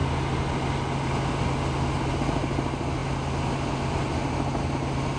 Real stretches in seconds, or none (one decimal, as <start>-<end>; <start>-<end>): 0.0-5.2